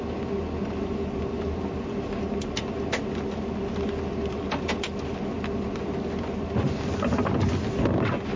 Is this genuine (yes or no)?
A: yes